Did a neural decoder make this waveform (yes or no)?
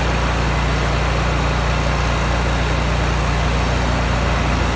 no